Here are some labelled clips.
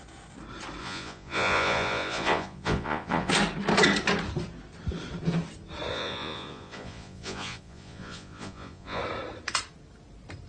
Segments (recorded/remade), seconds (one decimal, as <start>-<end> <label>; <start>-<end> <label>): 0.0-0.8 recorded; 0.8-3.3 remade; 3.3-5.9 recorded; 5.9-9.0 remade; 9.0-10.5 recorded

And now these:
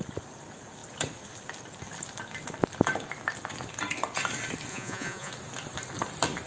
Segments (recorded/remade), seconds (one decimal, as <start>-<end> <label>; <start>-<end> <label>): 0.0-4.7 recorded; 4.7-5.3 remade; 5.3-6.5 recorded

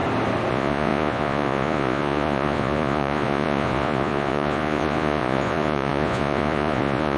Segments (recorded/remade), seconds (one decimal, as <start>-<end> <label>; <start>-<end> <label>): 0.0-0.5 recorded; 0.5-7.2 remade